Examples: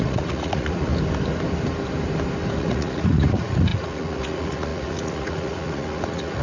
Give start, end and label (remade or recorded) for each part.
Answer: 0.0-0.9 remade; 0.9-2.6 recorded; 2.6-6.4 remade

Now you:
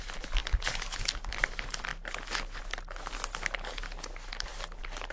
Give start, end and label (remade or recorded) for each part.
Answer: 0.0-5.1 recorded

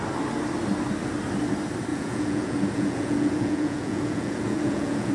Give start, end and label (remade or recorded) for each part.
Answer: 0.0-1.9 recorded; 1.9-5.1 remade